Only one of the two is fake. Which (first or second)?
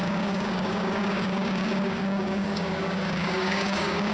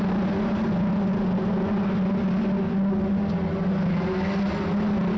first